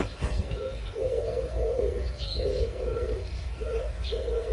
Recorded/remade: remade